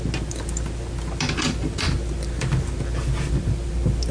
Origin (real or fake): real